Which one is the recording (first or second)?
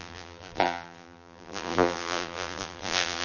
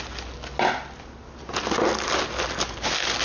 second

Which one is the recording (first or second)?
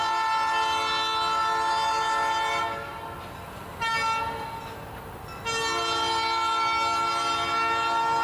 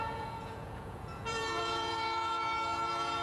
first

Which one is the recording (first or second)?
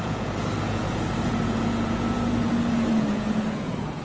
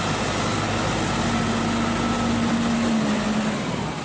second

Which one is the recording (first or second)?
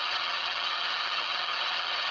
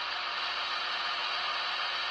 second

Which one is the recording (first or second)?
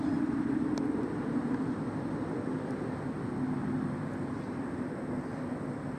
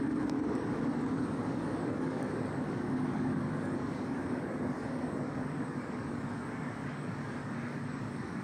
first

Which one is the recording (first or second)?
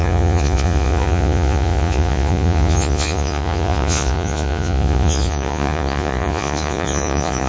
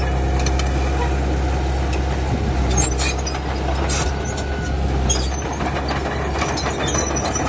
second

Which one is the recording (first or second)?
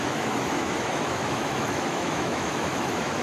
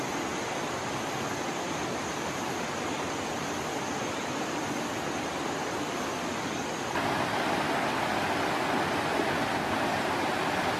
second